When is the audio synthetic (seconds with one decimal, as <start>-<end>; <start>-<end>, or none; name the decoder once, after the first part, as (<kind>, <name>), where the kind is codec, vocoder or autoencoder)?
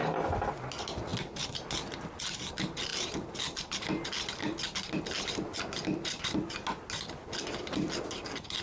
none